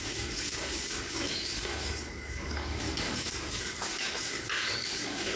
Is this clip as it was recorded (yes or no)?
no